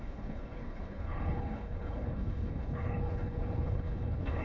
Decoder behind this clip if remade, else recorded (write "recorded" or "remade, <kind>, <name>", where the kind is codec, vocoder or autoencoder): remade, codec, HILCodec